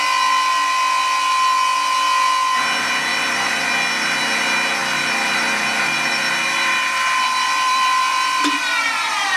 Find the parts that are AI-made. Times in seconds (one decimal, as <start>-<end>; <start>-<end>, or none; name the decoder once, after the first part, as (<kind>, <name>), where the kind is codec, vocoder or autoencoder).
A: 3.1-3.6 (vocoder, BigVGAN v2); 4.8-9.4

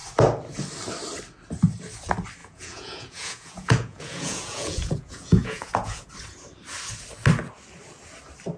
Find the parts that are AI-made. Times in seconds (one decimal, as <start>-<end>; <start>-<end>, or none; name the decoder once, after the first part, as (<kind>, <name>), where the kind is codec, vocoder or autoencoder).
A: 2.4-6.1 (vocoder, Vocos)

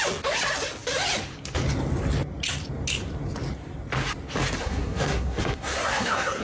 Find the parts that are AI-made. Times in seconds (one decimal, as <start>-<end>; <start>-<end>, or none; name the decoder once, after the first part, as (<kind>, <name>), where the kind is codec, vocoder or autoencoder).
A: 4.6-6.4 (codec, SNAC)